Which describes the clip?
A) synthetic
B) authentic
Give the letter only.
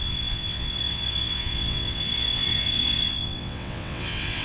A